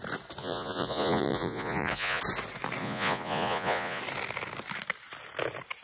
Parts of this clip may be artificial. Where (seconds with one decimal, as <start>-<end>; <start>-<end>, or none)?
0.4-2.2; 2.8-4.0